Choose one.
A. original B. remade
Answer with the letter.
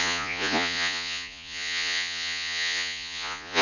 B